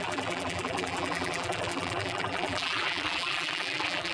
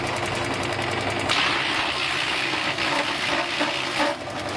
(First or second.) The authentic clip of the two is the second